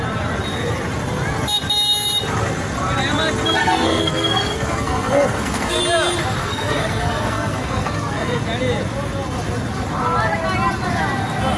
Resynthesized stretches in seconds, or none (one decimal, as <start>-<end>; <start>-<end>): 3.6-5.8; 6.4-8.4